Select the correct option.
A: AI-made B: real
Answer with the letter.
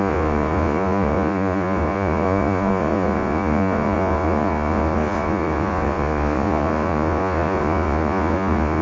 A